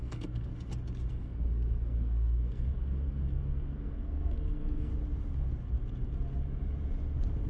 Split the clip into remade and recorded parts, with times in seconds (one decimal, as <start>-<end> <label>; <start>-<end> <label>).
0.0-0.5 remade; 0.5-1.1 recorded; 1.1-4.9 remade; 4.9-7.5 recorded